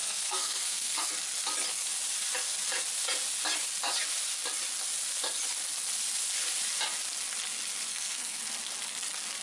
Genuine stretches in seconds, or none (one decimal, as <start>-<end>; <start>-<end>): 1.1-7.9; 8.4-9.4